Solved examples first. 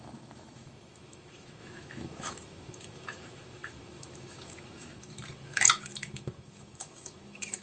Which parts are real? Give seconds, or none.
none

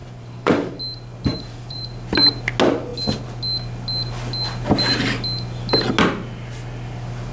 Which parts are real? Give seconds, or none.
0.8-1.3; 1.8-7.3